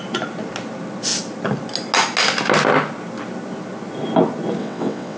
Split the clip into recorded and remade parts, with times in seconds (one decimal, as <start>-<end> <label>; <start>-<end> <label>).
0.0-4.6 recorded; 4.6-5.2 remade